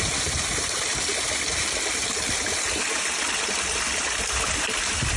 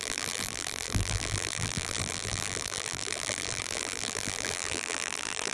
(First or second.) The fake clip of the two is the second